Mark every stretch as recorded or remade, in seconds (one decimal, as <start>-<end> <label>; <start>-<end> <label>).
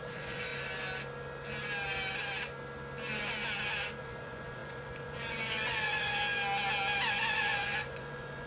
0.0-0.5 remade; 0.5-4.0 recorded; 4.0-6.4 remade; 6.4-7.1 recorded; 7.1-8.5 remade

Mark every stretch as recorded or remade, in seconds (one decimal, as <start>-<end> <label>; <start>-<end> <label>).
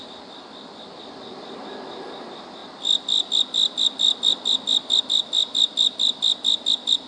0.0-7.1 recorded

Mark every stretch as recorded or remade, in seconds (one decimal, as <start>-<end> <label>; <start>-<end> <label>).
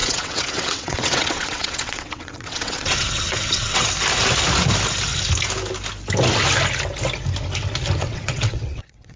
0.0-3.9 remade; 3.9-8.0 recorded; 8.0-9.2 remade